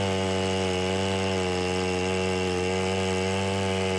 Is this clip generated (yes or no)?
yes